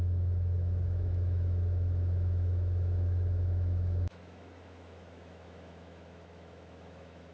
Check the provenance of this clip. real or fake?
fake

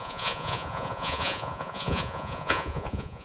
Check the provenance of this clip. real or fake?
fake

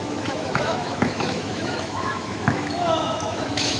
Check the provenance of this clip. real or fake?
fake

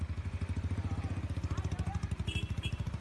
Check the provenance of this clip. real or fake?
real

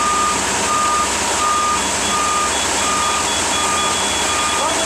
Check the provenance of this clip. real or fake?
real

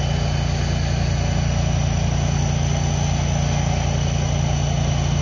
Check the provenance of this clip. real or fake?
real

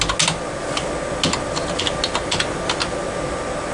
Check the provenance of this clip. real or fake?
real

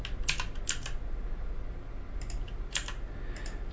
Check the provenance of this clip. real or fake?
real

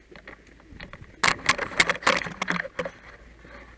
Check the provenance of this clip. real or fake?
real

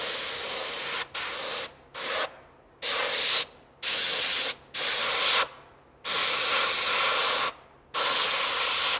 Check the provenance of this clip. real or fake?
real